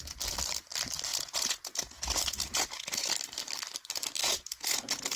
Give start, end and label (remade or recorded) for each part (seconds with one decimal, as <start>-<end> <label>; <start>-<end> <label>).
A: 0.0-1.1 recorded; 1.1-3.1 remade; 3.1-4.2 recorded; 4.2-5.2 remade